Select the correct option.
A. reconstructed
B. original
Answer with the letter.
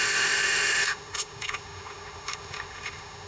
A